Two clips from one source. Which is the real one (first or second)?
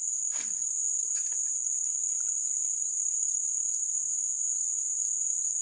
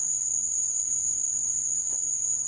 first